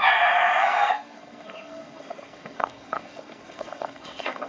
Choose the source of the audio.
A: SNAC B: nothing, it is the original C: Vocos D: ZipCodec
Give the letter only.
A